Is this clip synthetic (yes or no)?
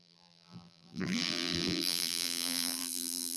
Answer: yes